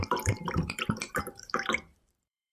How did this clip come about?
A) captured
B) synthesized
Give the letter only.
B